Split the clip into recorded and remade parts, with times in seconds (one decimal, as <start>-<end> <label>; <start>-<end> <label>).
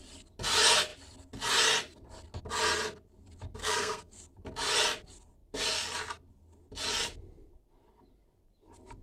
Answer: 0.0-3.6 recorded; 3.6-4.2 remade; 4.2-9.0 recorded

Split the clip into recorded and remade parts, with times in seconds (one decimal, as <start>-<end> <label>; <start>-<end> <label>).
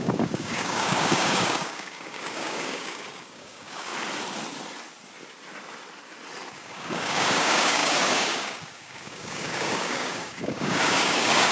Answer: 0.0-3.9 remade; 3.9-6.5 recorded; 6.5-11.5 remade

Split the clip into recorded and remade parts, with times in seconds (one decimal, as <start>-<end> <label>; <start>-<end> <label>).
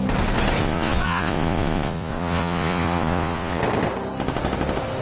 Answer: 0.0-0.6 recorded; 0.6-3.6 remade; 3.6-5.0 recorded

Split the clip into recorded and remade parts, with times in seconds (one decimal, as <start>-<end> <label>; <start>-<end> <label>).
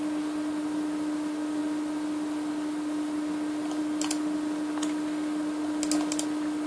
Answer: 0.0-6.7 recorded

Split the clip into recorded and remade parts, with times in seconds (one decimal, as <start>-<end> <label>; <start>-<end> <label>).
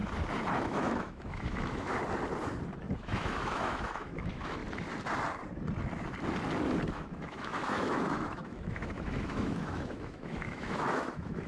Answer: 0.0-0.6 recorded; 0.6-1.9 remade; 1.9-3.0 recorded; 3.0-4.6 remade; 4.6-6.9 recorded; 6.9-11.5 remade